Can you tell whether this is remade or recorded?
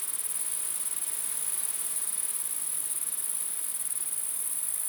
remade